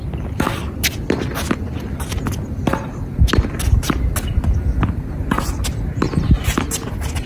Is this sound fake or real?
real